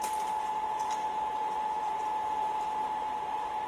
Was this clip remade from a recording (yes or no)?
yes